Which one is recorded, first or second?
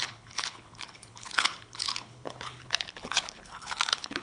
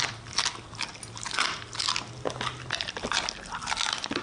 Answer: second